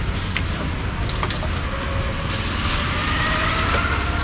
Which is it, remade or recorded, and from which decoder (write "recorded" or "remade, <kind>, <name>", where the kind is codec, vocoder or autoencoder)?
recorded